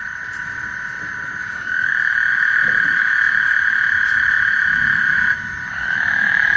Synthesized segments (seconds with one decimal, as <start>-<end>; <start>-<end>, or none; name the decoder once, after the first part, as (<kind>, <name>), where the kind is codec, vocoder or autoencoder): 1.4-1.9 (autoencoder, DAC-VAE); 2.3-6.6